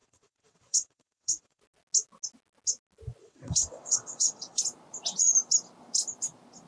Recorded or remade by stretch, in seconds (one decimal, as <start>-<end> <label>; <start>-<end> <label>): 0.0-1.6 remade; 1.6-3.2 recorded; 3.2-4.6 remade; 4.6-6.7 recorded